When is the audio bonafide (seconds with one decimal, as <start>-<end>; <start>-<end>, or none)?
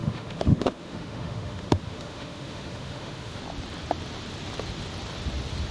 3.4-5.7